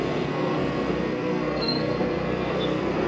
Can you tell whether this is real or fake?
fake